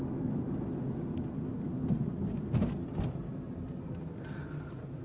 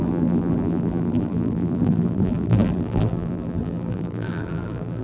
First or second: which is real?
first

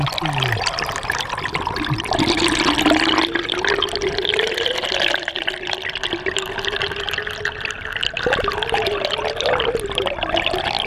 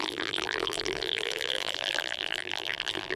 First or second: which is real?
first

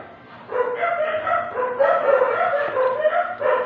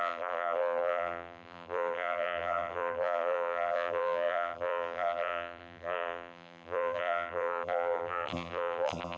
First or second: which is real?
first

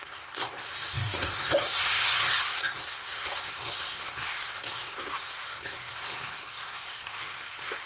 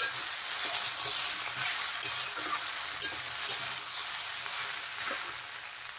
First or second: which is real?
second